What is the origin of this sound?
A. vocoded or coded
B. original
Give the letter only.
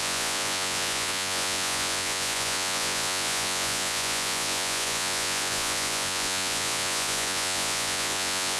A